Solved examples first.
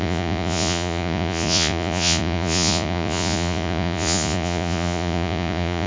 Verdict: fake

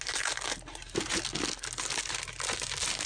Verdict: real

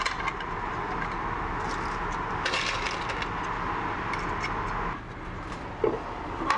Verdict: real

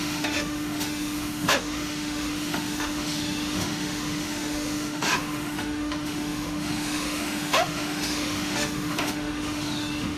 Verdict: fake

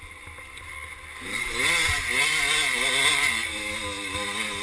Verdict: real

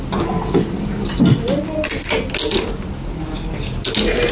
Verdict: real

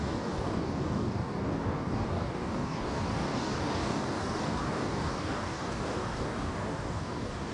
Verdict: fake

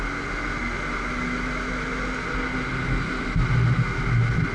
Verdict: real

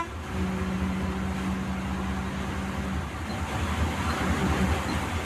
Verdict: real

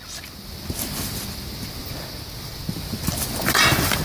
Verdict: real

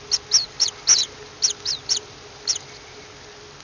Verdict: real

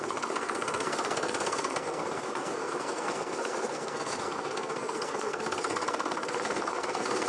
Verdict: fake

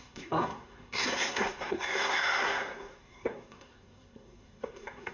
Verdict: fake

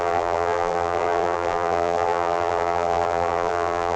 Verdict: fake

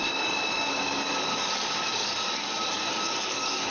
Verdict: fake